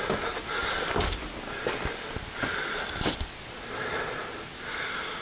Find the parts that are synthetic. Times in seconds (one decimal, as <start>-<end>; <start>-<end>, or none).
none